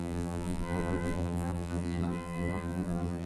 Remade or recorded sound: remade